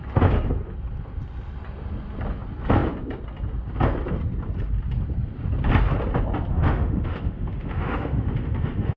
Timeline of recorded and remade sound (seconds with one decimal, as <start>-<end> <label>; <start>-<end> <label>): 0.0-6.5 recorded; 6.5-9.0 remade